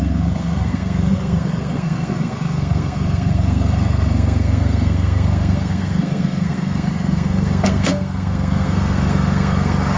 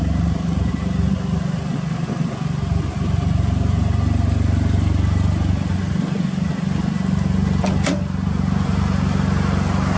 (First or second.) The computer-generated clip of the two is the first